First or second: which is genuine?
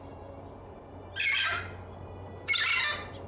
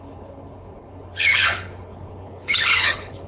first